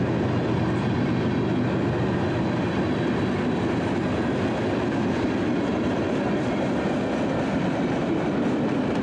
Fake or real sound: real